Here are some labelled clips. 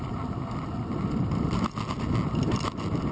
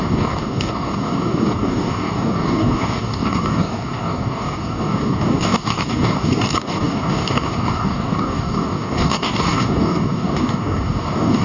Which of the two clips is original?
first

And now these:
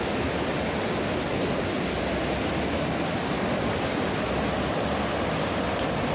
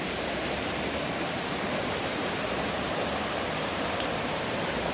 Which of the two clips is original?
first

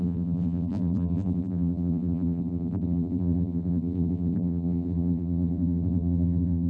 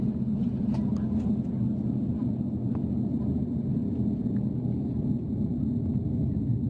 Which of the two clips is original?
second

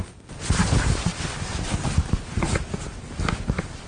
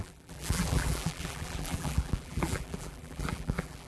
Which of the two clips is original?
first